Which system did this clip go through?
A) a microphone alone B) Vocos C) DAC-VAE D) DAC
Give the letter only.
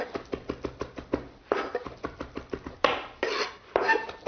A